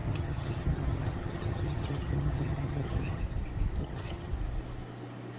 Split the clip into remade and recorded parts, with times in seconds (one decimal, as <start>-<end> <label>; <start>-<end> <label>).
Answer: 0.0-3.2 remade; 3.2-3.8 recorded; 3.8-4.3 remade; 4.3-5.4 recorded